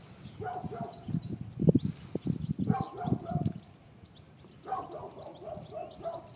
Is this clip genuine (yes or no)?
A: yes